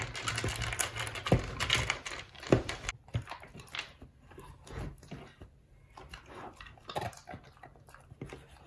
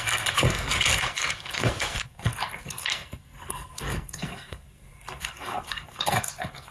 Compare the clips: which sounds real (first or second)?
first